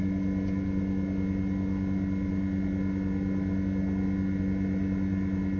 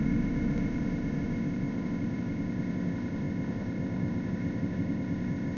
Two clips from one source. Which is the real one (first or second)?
first